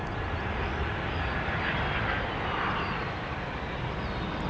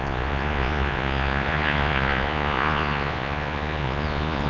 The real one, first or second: first